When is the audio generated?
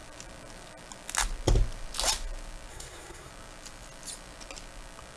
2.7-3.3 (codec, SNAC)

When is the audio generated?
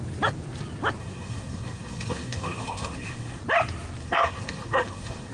1.0-3.4 (codec, SNAC); 4.0-5.3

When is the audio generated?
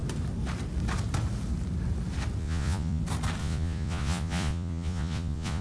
2.4-3.0 (vocoder, Vocos); 3.4-5.6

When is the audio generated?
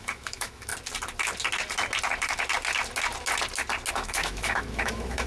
0.0-0.7 (autoencoder, DAC-VAE); 3.9-5.3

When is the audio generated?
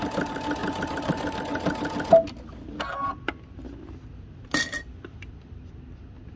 0.6-1.4 (vocoder, BigVGAN v2)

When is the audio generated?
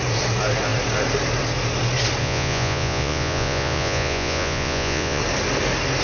2.2-5.2 (vocoder, Vocos)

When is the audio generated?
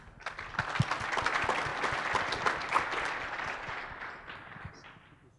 none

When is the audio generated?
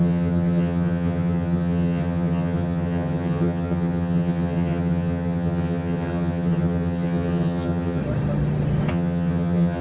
0.0-8.0 (vocoder, HiFi-GAN); 8.9-9.8